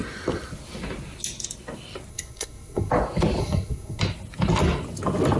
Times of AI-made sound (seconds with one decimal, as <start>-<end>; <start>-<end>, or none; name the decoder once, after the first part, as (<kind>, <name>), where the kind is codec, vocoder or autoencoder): 2.1-2.9 (codec, SNAC); 3.4-4.0

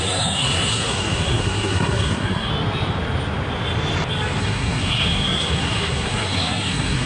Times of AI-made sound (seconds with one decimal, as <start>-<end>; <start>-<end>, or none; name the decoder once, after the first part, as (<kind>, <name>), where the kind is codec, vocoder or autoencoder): 0.0-2.5 (codec, SNAC); 4.4-7.1

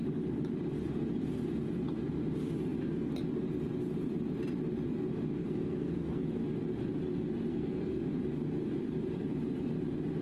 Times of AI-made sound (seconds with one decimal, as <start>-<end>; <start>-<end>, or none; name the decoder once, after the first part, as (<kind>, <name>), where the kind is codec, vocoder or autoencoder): 5.4-6.2 (codec, SNAC); 7.5-8.0